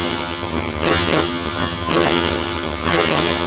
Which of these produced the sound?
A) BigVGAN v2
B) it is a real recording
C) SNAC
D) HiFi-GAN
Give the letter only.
D